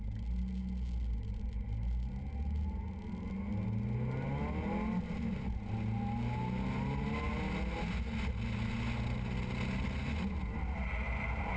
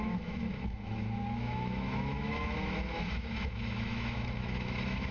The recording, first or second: first